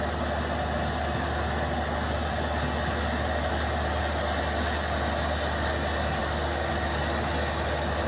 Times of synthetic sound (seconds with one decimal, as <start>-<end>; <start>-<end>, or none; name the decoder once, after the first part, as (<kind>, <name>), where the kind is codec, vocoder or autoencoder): 6.2-6.7 (codec, DAC)